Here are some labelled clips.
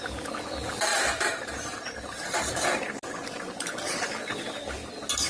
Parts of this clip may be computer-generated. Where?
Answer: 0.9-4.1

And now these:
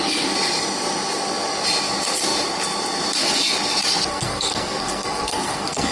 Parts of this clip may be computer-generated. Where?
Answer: 4.1-5.9

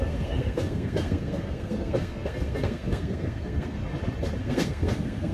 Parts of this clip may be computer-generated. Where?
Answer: 0.0-3.8; 4.4-5.3

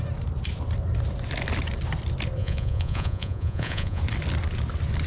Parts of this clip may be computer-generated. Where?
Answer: 2.4-4.0

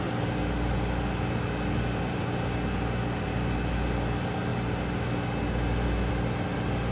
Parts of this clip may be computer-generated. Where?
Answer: none

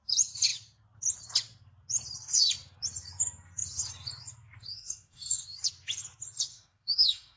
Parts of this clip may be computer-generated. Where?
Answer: 4.7-5.4; 6.5-7.4

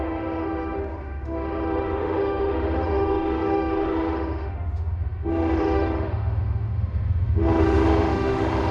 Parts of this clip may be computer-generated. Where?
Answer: 0.0-8.7